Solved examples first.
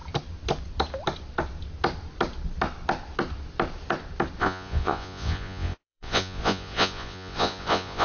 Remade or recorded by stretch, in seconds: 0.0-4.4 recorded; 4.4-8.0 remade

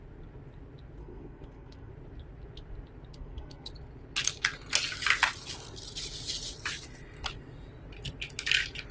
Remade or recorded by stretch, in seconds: 0.0-1.0 recorded; 1.0-1.9 remade; 1.9-3.1 recorded; 3.1-3.7 remade; 3.7-8.9 recorded

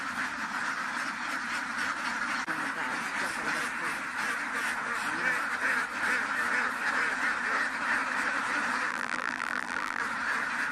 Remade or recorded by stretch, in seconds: 0.0-8.9 recorded; 8.9-10.0 remade; 10.0-10.7 recorded